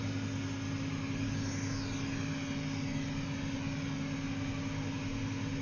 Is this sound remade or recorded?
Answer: recorded